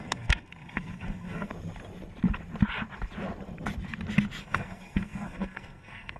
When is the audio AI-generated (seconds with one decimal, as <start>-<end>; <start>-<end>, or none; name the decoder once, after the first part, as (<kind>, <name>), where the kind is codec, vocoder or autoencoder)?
0.0-1.5 (codec, SNAC); 4.4-6.2